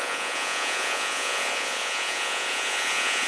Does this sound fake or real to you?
fake